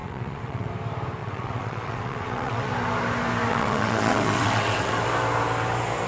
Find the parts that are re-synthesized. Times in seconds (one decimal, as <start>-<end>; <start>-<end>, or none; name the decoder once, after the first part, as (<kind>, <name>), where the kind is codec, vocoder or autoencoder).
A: 0.0-0.7 (vocoder, WaveNeXt); 1.2-2.7; 3.5-5.0